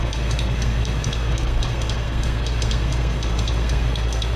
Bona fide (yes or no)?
no